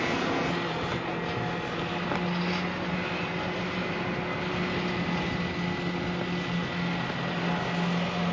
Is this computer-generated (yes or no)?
no